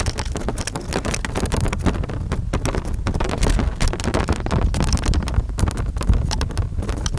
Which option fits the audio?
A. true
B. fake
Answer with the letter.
A